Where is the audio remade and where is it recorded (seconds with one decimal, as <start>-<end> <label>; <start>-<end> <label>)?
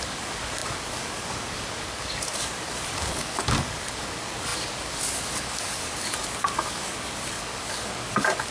0.0-8.5 remade